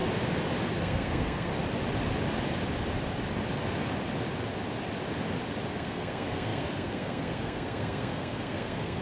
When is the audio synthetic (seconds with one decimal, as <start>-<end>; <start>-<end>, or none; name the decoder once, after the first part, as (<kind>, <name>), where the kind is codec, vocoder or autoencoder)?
0.7-1.5 (codec, SNAC); 5.7-9.0